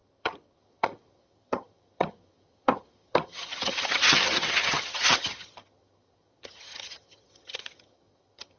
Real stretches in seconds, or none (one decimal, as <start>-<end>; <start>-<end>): none